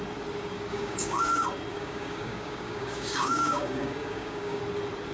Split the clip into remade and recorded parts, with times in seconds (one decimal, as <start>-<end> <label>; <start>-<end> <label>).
0.0-0.7 recorded; 0.7-1.2 remade; 1.2-1.7 recorded; 1.7-4.6 remade; 4.6-5.1 recorded